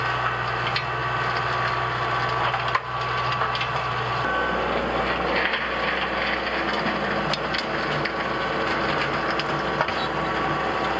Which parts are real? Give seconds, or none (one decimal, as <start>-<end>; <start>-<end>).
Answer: 0.0-11.0